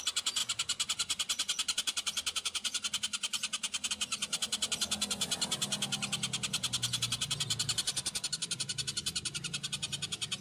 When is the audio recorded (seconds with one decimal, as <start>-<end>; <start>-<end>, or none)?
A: 0.0-0.4; 3.9-10.4